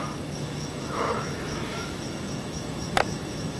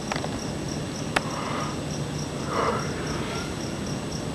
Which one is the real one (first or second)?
second